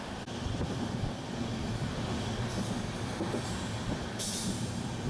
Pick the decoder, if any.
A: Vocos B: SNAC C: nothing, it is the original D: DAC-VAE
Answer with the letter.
C